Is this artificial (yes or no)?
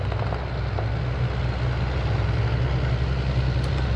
no